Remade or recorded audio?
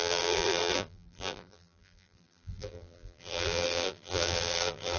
remade